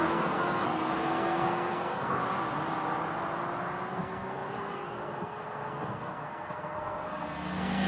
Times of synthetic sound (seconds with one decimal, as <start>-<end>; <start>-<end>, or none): 0.0-2.2; 3.9-7.9